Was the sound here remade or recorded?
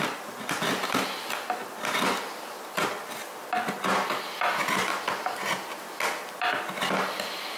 recorded